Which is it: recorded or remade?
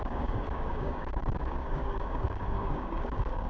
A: remade